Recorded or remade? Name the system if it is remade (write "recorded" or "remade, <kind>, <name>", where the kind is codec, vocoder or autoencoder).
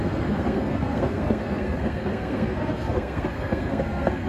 remade, codec, SNAC